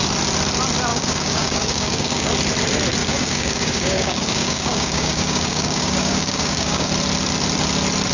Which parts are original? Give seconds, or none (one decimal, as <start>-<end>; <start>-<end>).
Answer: 0.0-0.9; 2.3-3.0; 6.9-8.1